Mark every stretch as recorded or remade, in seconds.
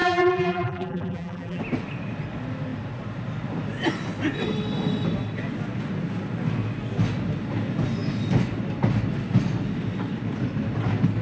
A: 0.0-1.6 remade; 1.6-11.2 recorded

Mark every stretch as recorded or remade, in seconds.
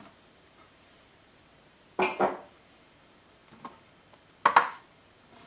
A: 0.0-2.1 remade; 2.1-2.6 recorded; 2.6-3.4 remade; 3.4-4.8 recorded; 4.8-5.5 remade